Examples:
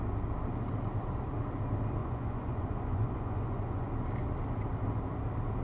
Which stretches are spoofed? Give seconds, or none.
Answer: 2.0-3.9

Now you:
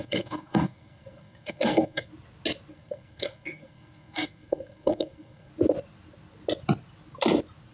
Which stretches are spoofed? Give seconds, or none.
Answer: 0.0-2.1; 2.7-5.5